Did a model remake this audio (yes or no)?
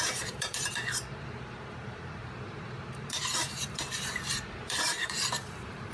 yes